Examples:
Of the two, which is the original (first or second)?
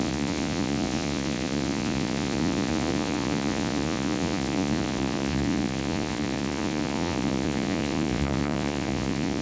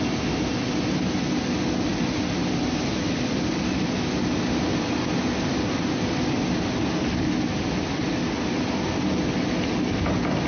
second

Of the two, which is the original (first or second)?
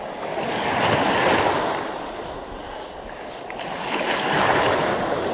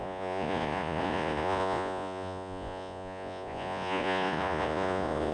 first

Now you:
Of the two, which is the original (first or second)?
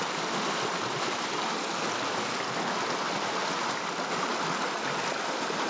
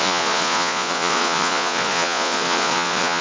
first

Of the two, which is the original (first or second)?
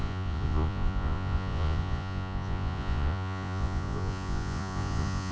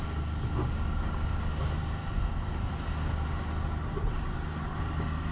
second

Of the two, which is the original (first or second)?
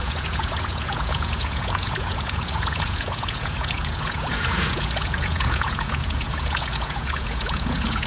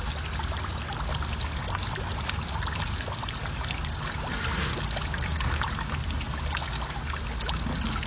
second